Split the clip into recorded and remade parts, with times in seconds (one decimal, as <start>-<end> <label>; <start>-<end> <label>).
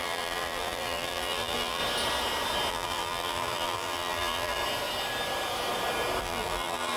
0.0-1.8 remade; 1.8-2.7 recorded; 2.7-4.6 remade; 4.6-6.2 recorded; 6.2-7.0 remade